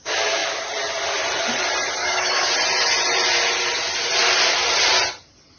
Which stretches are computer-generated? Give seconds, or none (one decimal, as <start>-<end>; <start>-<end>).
2.0-2.5